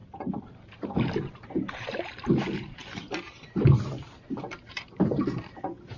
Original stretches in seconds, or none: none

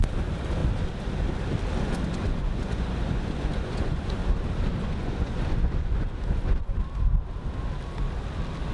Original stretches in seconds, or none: 0.6-1.8; 4.2-4.8; 6.8-8.7

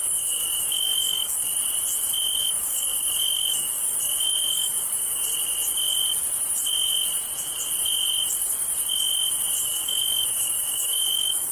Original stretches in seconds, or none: 1.5-2.4; 5.2-9.6

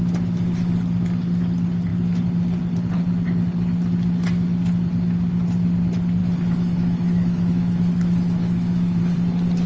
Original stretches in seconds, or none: 0.0-6.2; 9.0-9.7

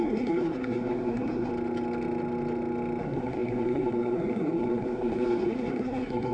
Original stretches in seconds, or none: 1.5-3.0

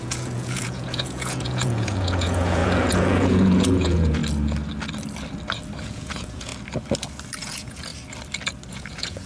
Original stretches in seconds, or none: 4.2-5.8; 6.5-7.4; 7.9-8.7

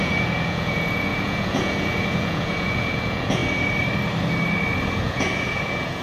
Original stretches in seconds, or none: 3.4-4.8